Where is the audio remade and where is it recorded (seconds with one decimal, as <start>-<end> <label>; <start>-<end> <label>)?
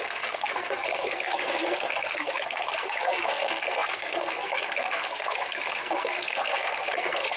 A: 0.0-7.4 remade